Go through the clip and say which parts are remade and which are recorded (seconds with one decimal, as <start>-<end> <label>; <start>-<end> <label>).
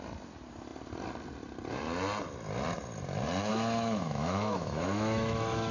0.0-3.5 recorded; 3.5-5.7 remade